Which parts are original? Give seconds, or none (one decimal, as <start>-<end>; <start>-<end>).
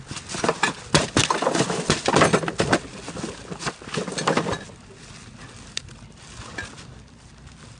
0.0-7.8